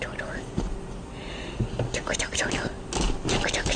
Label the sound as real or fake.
real